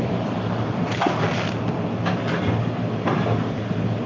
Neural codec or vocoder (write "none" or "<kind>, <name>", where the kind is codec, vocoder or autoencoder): none